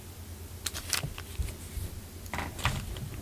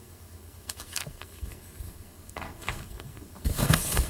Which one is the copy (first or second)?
second